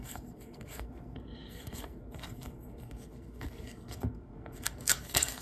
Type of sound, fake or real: fake